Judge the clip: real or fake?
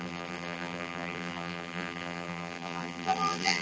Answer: fake